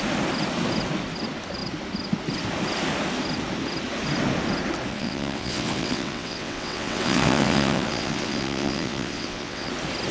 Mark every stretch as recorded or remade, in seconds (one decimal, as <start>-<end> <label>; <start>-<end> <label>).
0.0-4.9 recorded; 4.9-9.7 remade; 9.7-10.1 recorded

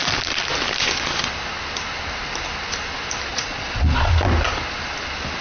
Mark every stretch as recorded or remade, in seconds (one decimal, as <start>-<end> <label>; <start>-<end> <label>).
0.0-3.3 recorded; 3.3-4.1 remade; 4.1-5.4 recorded

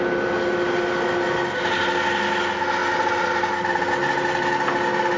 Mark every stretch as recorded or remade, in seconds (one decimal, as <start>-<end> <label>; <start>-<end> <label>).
0.0-5.2 recorded

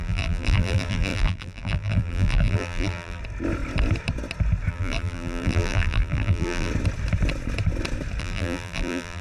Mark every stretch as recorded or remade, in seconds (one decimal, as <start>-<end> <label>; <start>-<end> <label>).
0.0-3.2 remade; 3.2-4.7 recorded; 4.7-6.7 remade; 6.7-8.2 recorded; 8.2-9.2 remade

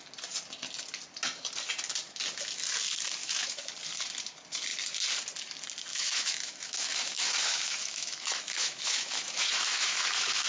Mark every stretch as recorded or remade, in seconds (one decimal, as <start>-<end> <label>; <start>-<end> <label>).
0.0-3.2 recorded; 3.2-3.7 remade; 3.7-5.9 recorded; 5.9-10.5 remade